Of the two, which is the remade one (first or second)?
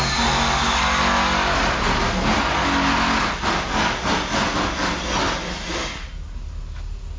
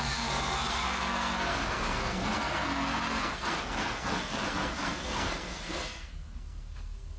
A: second